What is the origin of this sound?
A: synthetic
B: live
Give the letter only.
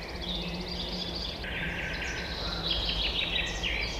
B